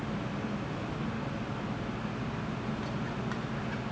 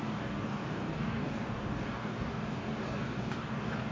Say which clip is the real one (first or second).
first